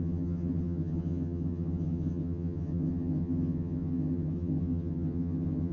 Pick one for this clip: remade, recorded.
remade